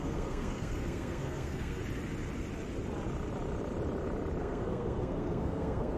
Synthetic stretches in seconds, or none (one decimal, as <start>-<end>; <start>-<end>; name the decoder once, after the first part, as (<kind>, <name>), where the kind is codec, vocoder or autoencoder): 0.0-1.8 (codec, SNAC); 4.4-6.0